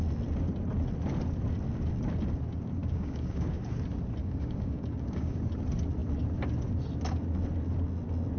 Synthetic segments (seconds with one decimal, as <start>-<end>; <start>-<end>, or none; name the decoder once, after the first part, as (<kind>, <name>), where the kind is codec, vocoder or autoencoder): 2.8-3.6 (codec, DAC); 4.2-5.4